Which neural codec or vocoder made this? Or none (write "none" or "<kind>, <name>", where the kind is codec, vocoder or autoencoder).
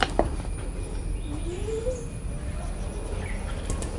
none